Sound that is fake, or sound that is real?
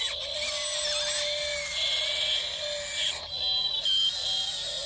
real